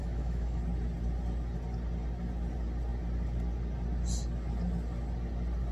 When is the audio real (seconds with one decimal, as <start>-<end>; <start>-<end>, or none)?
0.6-5.7